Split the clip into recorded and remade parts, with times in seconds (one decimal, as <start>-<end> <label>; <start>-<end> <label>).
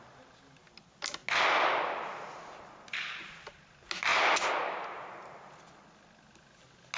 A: 0.0-4.1 recorded; 4.1-5.5 remade; 5.5-7.0 recorded